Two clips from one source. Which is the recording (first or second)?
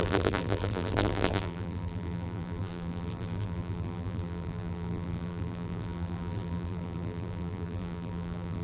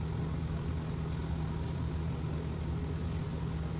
second